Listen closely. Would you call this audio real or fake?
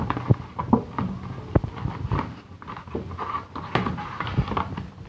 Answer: real